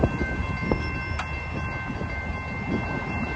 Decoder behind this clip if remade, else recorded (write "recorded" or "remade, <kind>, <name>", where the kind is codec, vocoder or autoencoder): recorded